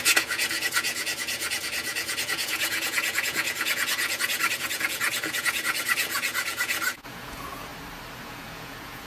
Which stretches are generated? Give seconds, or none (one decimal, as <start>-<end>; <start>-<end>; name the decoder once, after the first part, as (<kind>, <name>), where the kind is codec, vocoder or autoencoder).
0.0-7.7 (vocoder, Vocos); 8.2-9.1